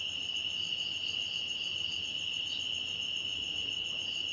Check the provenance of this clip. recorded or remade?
recorded